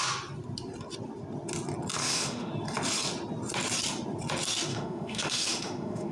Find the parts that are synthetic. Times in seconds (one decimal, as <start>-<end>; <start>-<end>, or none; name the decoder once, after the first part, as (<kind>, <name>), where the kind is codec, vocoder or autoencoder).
2.0-2.5 (autoencoder, DAC-VAE); 4.7-6.1